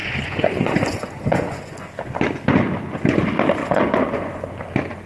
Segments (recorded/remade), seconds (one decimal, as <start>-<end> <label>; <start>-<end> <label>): 0.0-2.0 remade; 2.0-3.6 recorded; 3.6-4.4 remade; 4.4-5.1 recorded